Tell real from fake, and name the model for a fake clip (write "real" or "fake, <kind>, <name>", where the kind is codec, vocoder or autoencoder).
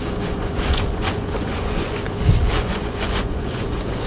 fake, vocoder, Vocos